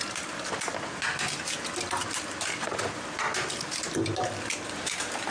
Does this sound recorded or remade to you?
recorded